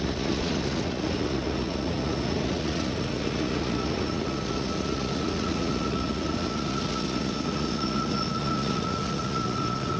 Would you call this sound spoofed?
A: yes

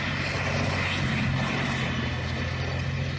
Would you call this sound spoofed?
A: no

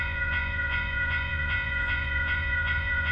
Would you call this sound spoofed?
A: yes